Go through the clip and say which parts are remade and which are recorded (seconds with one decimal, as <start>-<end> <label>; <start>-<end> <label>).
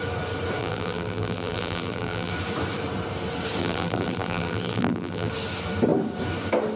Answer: 0.0-0.6 recorded; 0.6-2.3 remade; 2.3-3.6 recorded; 3.6-5.3 remade; 5.3-6.8 recorded